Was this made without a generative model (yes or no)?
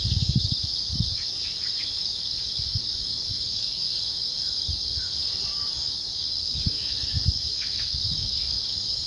no